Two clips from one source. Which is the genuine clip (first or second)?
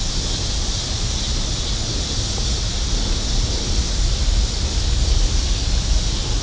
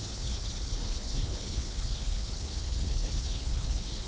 first